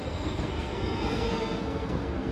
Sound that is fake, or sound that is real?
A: fake